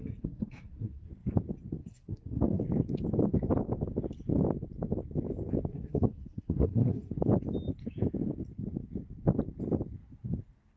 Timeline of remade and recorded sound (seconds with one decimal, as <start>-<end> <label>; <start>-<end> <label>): 0.0-1.1 remade; 1.1-1.8 recorded; 1.8-2.6 remade; 2.6-5.7 recorded; 5.7-7.1 remade; 7.1-10.8 recorded